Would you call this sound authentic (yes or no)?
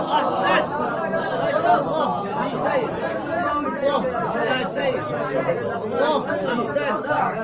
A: yes